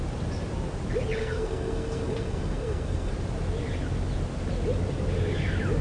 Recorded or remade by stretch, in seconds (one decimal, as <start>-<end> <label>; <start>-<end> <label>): 0.0-1.2 recorded; 1.2-3.1 remade; 3.1-5.8 recorded